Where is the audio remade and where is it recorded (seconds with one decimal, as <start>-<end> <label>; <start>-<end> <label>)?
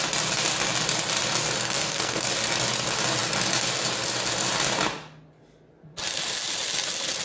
0.0-1.6 recorded; 1.6-2.3 remade; 2.3-7.2 recorded